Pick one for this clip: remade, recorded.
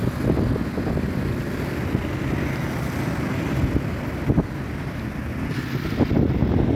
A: recorded